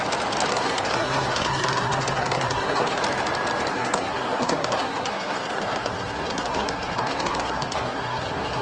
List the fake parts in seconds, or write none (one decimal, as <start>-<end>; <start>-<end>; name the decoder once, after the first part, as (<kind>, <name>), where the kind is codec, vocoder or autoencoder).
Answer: 0.5-3.0 (codec, SNAC); 3.7-8.6